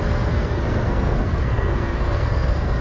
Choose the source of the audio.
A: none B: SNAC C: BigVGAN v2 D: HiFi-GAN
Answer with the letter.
B